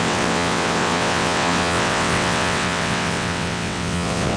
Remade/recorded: remade